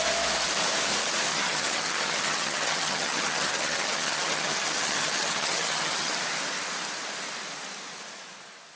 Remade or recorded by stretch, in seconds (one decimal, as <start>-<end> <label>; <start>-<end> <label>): 0.0-1.3 recorded; 1.3-6.1 remade; 6.1-8.8 recorded